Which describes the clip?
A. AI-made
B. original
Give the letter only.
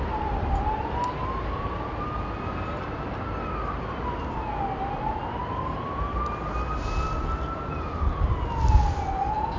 B